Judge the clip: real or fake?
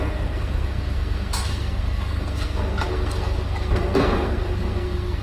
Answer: fake